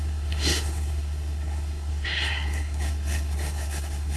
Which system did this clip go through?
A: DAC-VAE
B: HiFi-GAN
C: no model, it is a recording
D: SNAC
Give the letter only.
D